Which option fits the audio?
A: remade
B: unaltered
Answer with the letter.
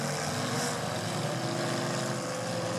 B